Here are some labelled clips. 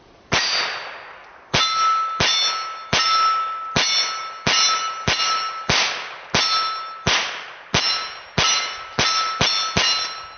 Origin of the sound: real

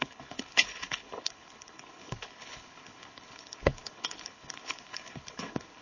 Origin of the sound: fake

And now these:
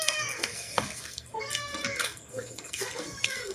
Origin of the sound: fake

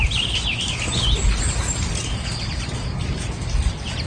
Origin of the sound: real